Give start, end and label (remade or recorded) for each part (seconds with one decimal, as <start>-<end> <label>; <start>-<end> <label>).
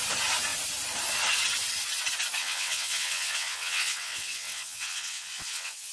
0.0-2.4 recorded; 2.4-5.9 remade